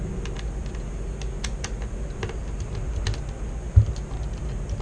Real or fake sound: real